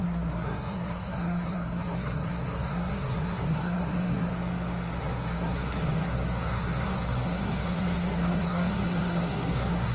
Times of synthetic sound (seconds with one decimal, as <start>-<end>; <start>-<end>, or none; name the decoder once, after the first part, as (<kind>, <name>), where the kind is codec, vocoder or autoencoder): 0.0-4.3 (codec, SNAC); 5.0-9.9